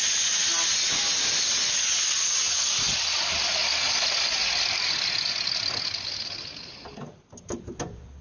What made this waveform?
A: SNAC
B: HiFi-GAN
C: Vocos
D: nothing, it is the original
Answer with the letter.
D